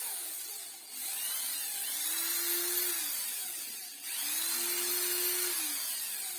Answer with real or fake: real